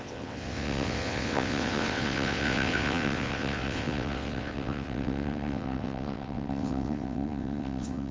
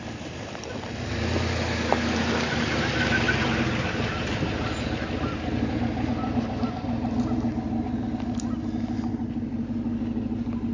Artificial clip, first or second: first